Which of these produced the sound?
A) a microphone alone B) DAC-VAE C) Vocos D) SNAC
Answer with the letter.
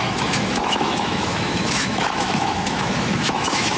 B